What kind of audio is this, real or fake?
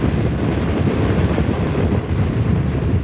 real